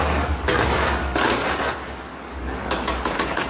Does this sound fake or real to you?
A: fake